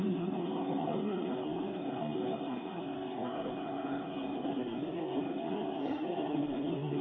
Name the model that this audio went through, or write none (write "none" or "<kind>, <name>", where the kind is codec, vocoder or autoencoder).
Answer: codec, SNAC